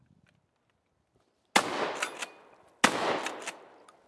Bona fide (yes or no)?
yes